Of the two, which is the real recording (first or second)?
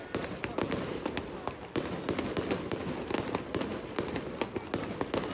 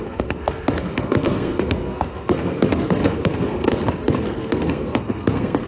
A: first